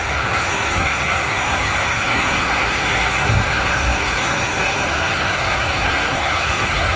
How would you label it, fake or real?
fake